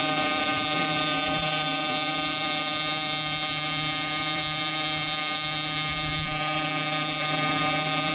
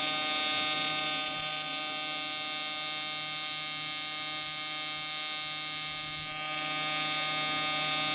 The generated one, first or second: first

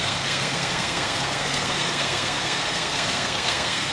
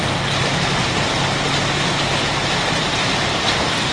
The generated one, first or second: first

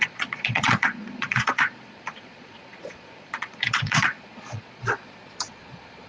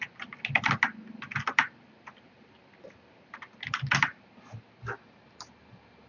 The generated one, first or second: first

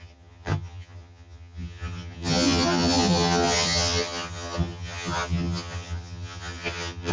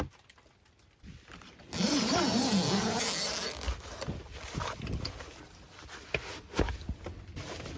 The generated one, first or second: first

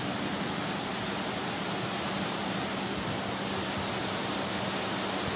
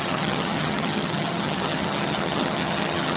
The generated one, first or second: second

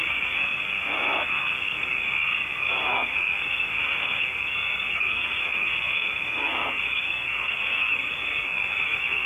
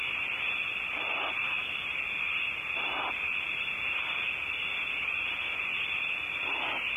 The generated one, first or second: first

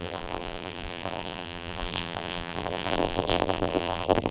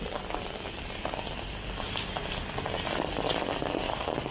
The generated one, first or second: first